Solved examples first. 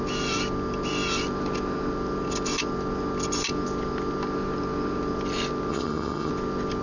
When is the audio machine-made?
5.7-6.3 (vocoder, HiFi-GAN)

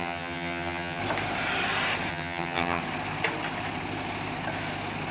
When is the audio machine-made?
0.0-1.0 (vocoder, HiFi-GAN); 2.1-2.8